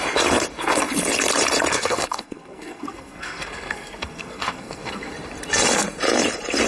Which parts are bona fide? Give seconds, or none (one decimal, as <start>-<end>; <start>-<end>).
0.0-1.7; 5.1-6.7